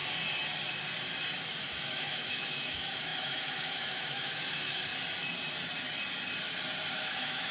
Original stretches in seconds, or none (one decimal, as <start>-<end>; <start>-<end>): 0.0-1.6; 4.9-6.9

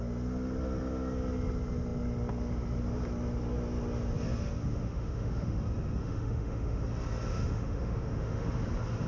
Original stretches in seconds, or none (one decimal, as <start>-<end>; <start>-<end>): 0.0-4.6; 5.6-6.0; 6.8-7.3; 8.6-9.1